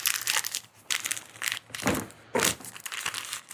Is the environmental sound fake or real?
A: real